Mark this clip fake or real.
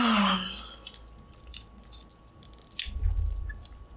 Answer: real